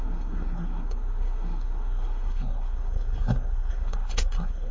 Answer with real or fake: fake